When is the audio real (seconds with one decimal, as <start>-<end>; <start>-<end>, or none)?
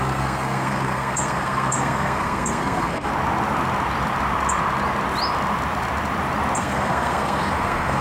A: 3.1-6.6